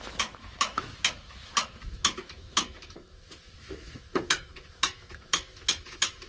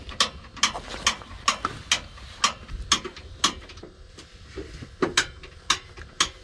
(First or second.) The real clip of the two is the second